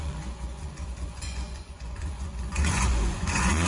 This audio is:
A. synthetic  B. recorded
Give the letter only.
A